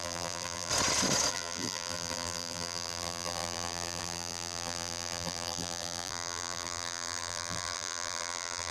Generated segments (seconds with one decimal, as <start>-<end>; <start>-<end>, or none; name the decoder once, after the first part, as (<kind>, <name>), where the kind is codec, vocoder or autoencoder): 0.0-0.7 (vocoder, BigVGAN v2); 1.3-8.7